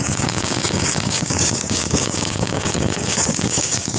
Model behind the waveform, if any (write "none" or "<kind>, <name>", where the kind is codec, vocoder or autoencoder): codec, DAC